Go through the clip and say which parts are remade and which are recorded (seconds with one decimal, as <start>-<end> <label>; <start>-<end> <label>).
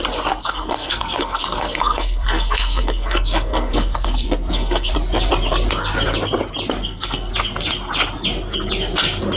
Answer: 0.0-0.4 recorded; 0.4-4.9 remade; 4.9-6.8 recorded; 6.8-7.3 remade; 7.3-9.4 recorded